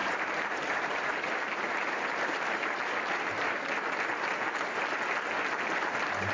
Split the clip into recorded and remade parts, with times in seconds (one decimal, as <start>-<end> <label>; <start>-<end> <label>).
0.0-3.5 remade; 3.5-6.3 recorded